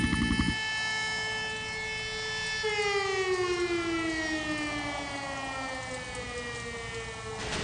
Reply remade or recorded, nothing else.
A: recorded